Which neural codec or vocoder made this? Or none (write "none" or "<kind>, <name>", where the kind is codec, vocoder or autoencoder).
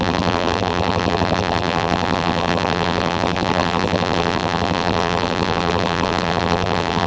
vocoder, BigVGAN v2